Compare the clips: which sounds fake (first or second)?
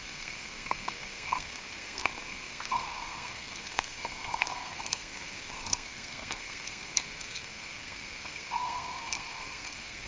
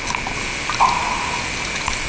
first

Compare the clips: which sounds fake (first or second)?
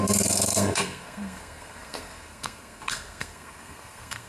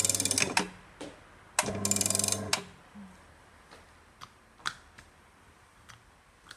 first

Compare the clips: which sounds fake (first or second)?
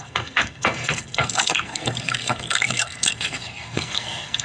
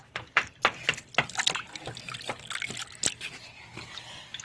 first